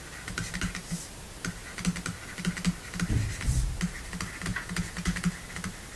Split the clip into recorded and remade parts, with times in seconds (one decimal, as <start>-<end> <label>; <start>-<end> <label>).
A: 0.0-4.5 recorded; 4.5-5.3 remade; 5.3-6.0 recorded